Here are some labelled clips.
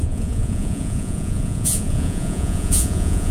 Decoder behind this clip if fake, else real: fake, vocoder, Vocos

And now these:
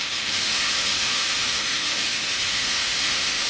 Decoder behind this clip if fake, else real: fake, autoencoder, DAC-VAE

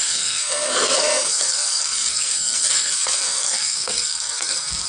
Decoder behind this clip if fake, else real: fake, codec, SNAC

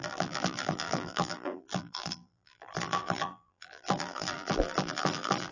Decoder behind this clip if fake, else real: fake, vocoder, BigVGAN v2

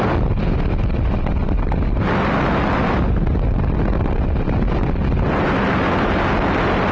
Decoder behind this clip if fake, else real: real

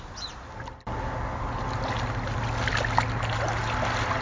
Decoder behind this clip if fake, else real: real